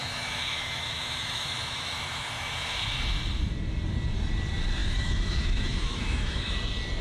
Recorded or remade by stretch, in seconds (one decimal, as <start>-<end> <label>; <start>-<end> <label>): 0.0-3.0 remade; 3.0-4.8 recorded; 4.8-6.5 remade; 6.5-7.0 recorded